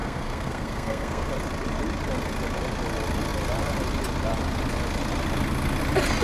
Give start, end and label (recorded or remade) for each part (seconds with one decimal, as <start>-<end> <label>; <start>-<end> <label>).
0.0-1.3 remade; 1.3-6.2 recorded